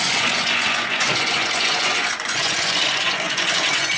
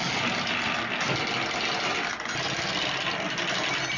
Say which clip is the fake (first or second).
first